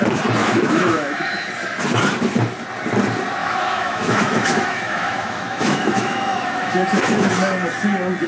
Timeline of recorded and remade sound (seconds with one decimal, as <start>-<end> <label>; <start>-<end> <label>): 0.0-0.4 recorded; 0.4-1.5 remade; 1.5-3.4 recorded; 3.4-7.3 remade; 7.3-8.3 recorded